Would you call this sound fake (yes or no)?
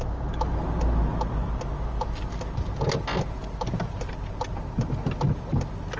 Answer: no